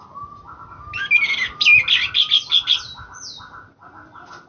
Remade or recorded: recorded